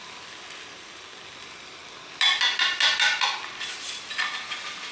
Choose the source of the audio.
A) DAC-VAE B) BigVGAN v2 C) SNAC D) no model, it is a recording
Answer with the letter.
D